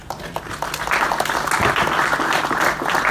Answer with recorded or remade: recorded